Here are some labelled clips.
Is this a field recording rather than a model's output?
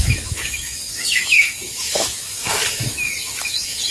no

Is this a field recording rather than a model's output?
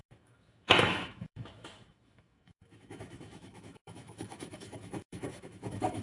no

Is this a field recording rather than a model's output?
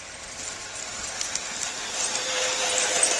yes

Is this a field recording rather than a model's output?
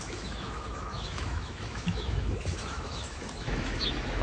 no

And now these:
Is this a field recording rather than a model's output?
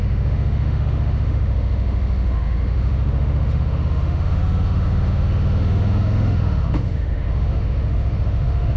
no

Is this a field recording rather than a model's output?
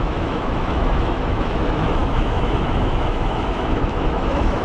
no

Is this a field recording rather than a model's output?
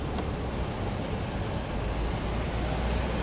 yes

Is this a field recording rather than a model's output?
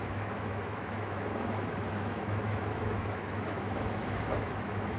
no